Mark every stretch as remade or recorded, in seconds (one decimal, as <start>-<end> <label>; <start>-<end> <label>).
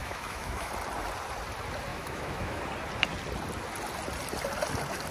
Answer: 0.0-0.7 remade; 0.7-1.9 recorded; 1.9-2.6 remade; 2.6-5.1 recorded